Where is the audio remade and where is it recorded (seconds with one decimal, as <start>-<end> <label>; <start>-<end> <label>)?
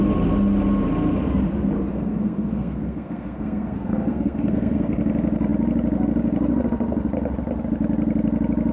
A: 0.0-1.9 recorded; 1.9-5.0 remade; 5.0-8.7 recorded